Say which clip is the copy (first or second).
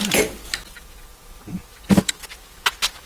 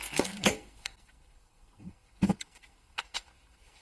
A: second